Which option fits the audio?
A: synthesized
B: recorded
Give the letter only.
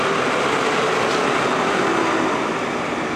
B